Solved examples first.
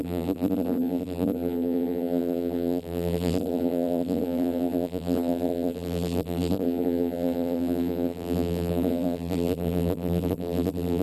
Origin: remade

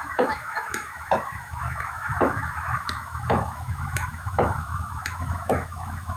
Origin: remade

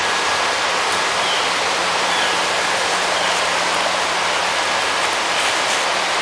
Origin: recorded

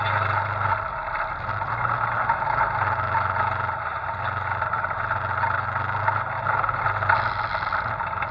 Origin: recorded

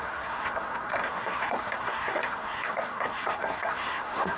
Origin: remade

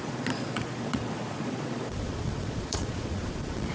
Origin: remade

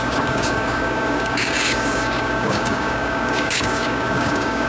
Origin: remade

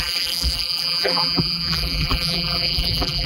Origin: remade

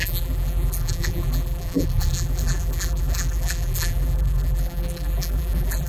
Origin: remade